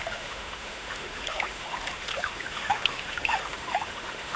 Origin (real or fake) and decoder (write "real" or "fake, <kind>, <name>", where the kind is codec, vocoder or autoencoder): fake, autoencoder, DAC-VAE